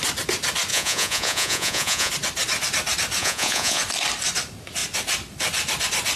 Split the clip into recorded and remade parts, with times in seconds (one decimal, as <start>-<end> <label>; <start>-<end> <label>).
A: 0.0-0.7 recorded; 0.7-2.1 remade; 2.1-3.2 recorded; 3.2-3.8 remade; 3.8-6.2 recorded